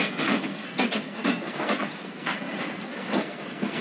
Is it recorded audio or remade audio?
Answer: remade